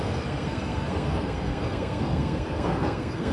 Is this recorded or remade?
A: remade